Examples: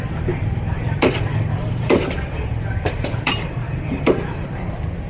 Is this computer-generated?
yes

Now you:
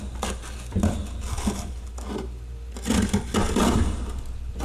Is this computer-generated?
no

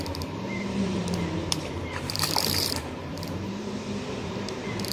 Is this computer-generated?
yes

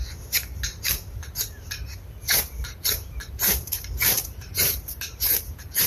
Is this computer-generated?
yes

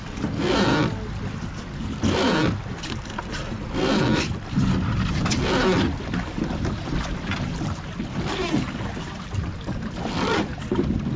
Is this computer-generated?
no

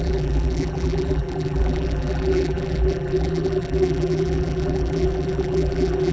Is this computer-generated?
yes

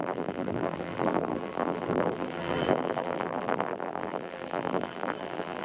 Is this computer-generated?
yes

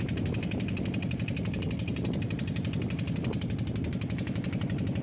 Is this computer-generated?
yes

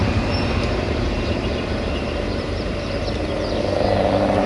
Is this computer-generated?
yes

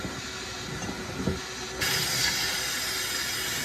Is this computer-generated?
no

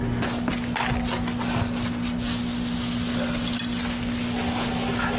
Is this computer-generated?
no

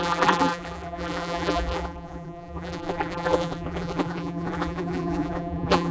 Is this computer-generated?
yes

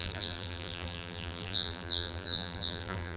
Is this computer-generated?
yes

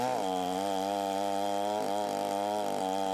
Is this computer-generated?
yes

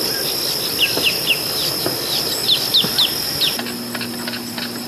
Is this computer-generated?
no